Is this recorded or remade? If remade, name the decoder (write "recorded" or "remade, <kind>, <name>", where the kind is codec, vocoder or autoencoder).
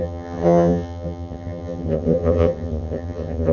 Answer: remade, vocoder, HiFi-GAN